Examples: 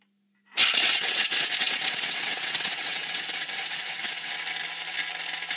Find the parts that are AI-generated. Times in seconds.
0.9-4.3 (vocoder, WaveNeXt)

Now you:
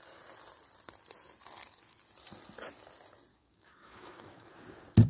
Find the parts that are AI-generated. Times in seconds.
3.3-4.5 (autoencoder, DAC-VAE)

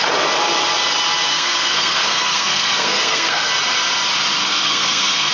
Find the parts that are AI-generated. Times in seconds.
1.3-3.5 (codec, SNAC); 4.4-5.3

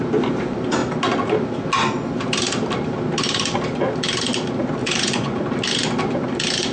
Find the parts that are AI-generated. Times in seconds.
4.8-5.4 (vocoder, Vocos)